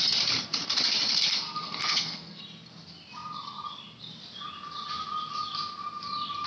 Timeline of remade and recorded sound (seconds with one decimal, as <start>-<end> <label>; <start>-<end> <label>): 0.0-1.3 recorded; 1.3-2.4 remade; 2.4-6.5 recorded